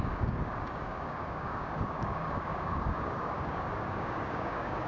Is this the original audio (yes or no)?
no